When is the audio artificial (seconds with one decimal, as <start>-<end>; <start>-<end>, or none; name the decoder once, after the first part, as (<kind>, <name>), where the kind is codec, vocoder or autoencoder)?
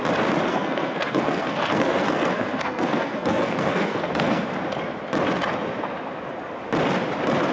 0.5-4.4 (codec, SNAC)